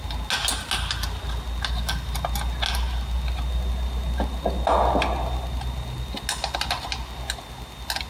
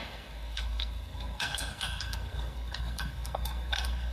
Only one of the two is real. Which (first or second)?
first